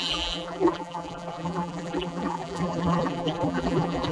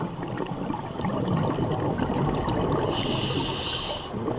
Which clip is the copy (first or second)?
first